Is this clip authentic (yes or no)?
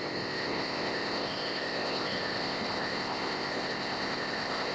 no